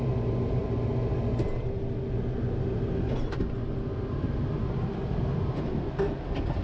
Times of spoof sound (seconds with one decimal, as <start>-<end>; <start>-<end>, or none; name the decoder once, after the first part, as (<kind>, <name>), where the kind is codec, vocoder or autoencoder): none